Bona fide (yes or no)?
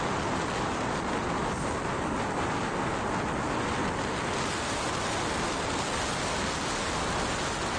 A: yes